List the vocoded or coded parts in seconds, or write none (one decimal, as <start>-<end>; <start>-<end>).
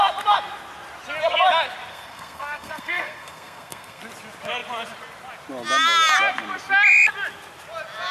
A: 1.9-4.0